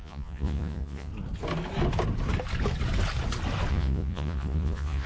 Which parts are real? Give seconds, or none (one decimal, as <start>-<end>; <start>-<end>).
1.1-3.7